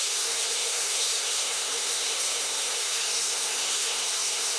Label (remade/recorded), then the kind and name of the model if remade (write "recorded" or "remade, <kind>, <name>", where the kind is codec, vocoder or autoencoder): remade, codec, SNAC